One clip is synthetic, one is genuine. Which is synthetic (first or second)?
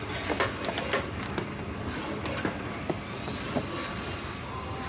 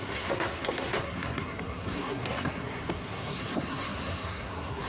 second